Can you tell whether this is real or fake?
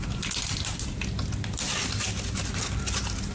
real